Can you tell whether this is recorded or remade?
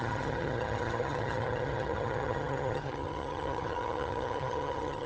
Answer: remade